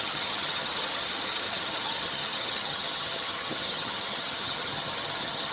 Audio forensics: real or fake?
fake